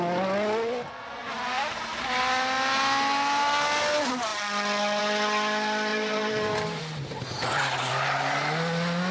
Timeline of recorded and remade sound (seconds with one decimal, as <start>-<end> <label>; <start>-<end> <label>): 0.0-1.2 recorded; 1.2-1.7 remade; 1.7-5.9 recorded; 5.9-6.8 remade; 6.8-9.1 recorded